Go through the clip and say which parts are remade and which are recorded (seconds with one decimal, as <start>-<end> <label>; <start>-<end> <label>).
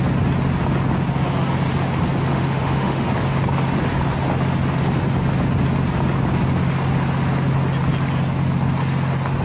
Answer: 0.0-2.3 recorded; 2.3-3.1 remade; 3.1-9.4 recorded